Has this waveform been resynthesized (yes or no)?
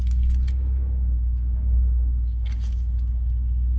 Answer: no